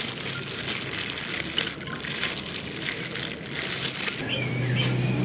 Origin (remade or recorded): recorded